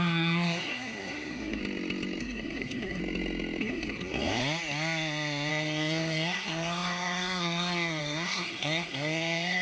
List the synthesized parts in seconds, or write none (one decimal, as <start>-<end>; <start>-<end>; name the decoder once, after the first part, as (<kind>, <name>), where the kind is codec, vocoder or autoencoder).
0.0-1.6 (codec, SNAC); 2.2-3.0; 3.6-4.4; 5.5-9.6